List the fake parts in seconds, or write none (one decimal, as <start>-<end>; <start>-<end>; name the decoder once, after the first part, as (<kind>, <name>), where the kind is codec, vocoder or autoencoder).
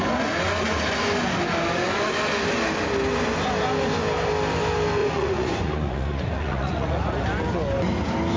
5.0-7.1 (vocoder, Vocos)